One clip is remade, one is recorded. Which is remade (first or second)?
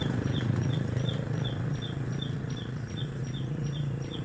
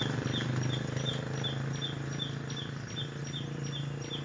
first